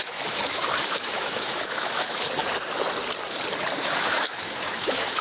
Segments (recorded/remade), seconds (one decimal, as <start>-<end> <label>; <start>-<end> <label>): 0.0-2.4 remade; 2.4-3.8 recorded; 3.8-5.2 remade